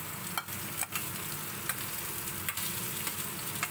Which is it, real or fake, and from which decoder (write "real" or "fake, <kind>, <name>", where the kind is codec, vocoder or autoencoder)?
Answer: real